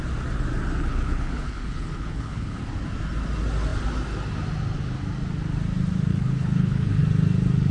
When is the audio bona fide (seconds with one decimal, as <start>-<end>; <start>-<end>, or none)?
0.0-0.9; 2.6-6.1; 7.0-7.7